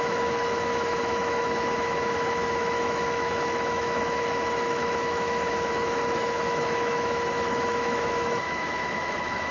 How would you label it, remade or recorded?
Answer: remade